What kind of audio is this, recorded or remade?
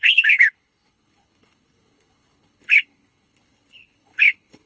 remade